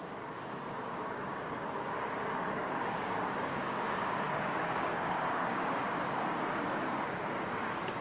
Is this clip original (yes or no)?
no